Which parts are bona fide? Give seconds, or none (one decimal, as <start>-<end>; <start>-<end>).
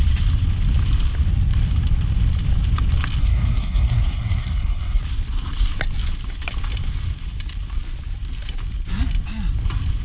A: 0.0-3.2; 5.0-10.0